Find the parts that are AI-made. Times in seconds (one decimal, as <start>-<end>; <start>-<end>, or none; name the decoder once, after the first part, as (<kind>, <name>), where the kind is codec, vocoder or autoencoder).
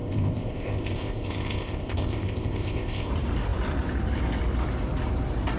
0.0-3.1 (codec, ZipCodec)